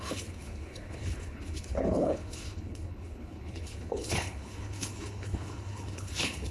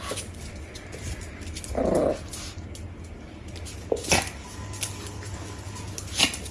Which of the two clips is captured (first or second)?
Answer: second